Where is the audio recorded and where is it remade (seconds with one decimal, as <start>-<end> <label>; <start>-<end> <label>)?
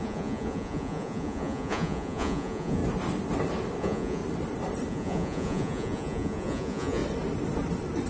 0.0-2.8 remade; 2.8-3.8 recorded; 3.8-4.2 remade; 4.2-4.9 recorded; 4.9-7.0 remade; 7.0-8.1 recorded